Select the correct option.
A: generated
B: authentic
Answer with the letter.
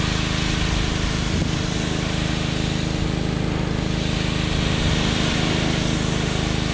B